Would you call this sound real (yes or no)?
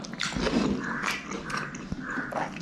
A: yes